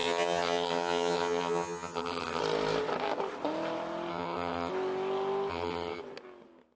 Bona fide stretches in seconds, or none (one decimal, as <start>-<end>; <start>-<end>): 2.4-4.1; 4.7-5.5; 6.0-6.8